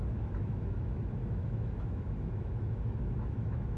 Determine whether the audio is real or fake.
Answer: fake